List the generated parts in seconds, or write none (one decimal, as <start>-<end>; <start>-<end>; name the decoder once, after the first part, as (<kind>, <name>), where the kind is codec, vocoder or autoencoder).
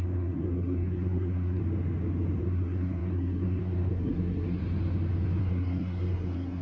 0.0-1.6 (codec, SNAC); 2.4-4.6; 5.4-6.6